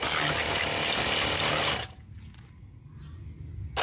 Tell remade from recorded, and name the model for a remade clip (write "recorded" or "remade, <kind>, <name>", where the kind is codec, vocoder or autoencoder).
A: recorded